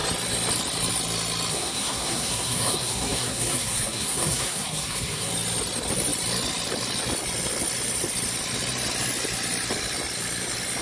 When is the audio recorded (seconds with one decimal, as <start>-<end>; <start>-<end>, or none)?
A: 0.0-1.5; 5.3-10.8